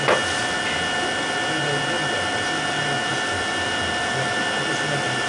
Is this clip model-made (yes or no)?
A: no